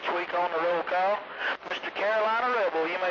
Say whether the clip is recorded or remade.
recorded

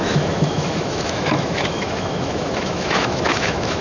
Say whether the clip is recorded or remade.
remade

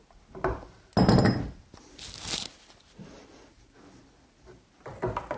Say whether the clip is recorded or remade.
recorded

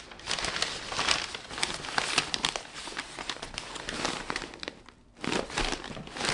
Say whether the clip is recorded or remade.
recorded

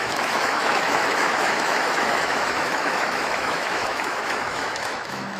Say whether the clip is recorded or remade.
remade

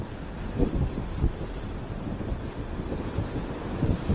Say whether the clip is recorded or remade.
recorded